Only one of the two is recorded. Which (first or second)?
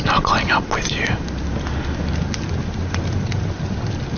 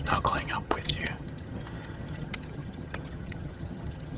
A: first